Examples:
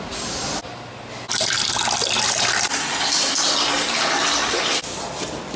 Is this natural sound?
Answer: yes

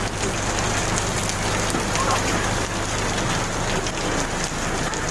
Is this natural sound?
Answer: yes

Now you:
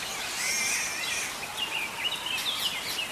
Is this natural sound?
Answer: yes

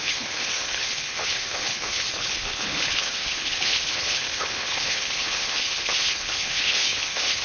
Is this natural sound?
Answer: no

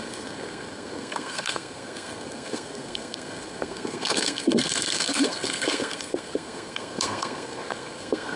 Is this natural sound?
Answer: no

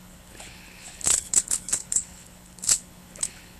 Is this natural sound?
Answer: no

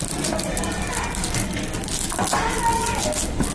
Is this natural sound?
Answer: yes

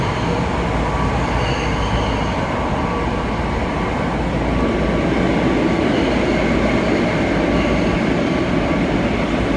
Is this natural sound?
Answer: yes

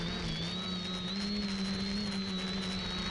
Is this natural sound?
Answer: yes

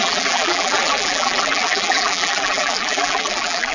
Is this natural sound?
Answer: no